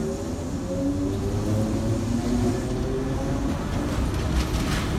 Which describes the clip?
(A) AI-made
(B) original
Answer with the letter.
B